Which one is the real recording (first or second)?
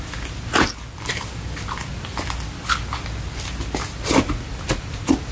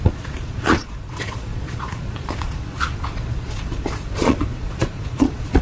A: first